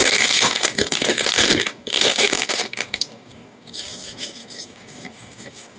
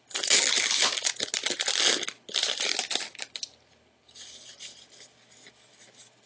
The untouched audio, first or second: second